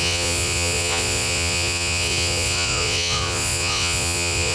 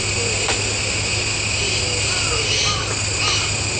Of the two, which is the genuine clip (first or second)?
second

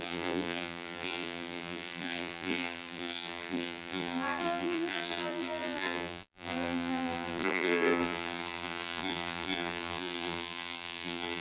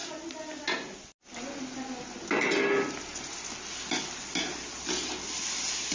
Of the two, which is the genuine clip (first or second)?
second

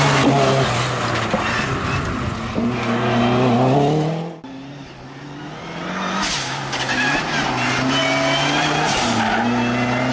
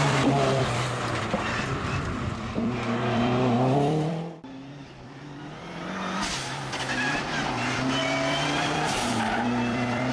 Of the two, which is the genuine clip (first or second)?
first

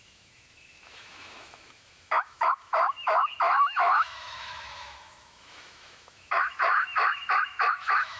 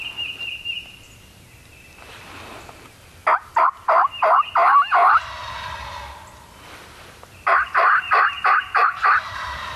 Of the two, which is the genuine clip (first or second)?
second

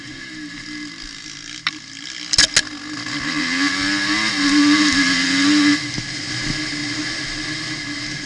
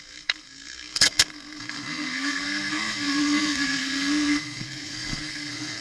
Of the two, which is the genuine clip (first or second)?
first